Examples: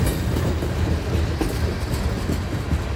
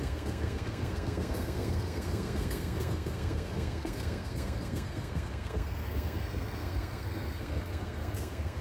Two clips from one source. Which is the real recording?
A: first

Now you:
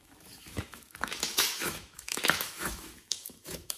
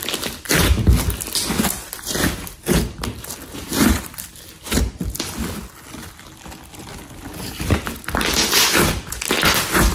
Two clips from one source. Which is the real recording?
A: second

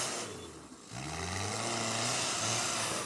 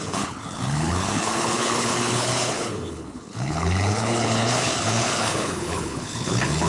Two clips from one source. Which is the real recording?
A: first